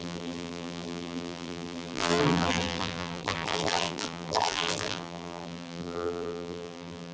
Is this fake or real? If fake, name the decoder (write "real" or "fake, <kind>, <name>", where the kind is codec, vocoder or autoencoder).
fake, vocoder, BigVGAN v2